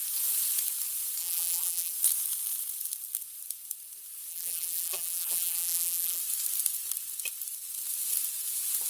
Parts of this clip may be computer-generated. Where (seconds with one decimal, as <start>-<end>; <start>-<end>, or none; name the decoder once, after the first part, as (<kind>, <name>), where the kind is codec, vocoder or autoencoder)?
1.2-1.9 (vocoder, BigVGAN v2); 4.3-6.2